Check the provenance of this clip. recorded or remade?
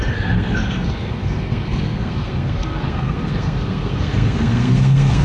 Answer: remade